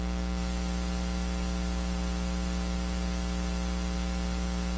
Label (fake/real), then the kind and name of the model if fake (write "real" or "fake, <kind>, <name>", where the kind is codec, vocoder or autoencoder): real